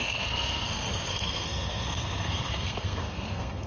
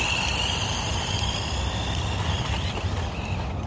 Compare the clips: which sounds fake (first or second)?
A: first